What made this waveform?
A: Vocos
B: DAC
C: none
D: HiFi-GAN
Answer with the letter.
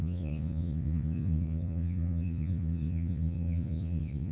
A